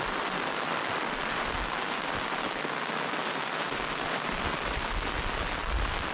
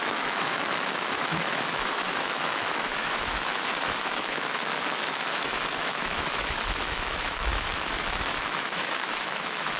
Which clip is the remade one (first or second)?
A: second